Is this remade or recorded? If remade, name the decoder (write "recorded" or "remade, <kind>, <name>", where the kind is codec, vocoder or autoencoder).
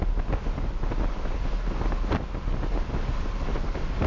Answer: recorded